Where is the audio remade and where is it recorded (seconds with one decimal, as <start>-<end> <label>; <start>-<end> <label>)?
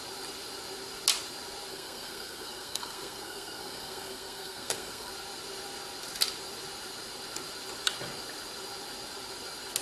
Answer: 0.0-1.7 recorded; 1.7-5.1 remade; 5.1-9.8 recorded